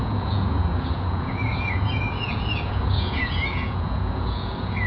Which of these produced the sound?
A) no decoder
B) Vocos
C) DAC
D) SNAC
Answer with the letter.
B